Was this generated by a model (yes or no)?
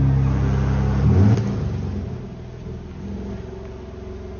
no